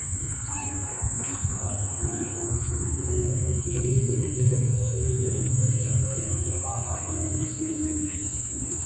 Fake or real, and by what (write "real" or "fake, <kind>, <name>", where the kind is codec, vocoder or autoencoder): fake, codec, SNAC